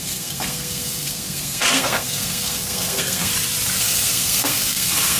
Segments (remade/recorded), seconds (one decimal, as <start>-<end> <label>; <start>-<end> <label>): 0.0-3.3 remade; 3.3-3.8 recorded; 3.8-5.2 remade